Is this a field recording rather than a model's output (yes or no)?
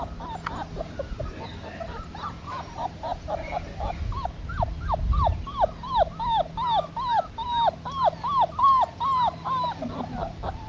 yes